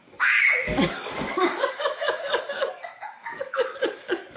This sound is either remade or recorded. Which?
remade